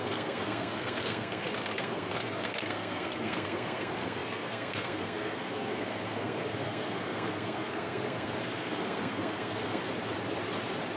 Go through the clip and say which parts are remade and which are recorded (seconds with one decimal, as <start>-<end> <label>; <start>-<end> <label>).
0.0-9.8 remade; 9.8-11.0 recorded